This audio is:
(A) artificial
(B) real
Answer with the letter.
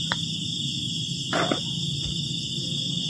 B